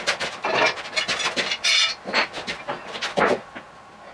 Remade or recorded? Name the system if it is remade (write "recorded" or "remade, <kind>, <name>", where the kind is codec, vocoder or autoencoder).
recorded